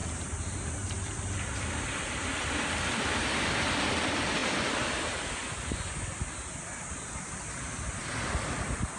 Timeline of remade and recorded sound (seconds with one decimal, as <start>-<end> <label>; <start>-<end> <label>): 0.0-5.4 recorded; 5.4-6.2 remade; 6.2-9.0 recorded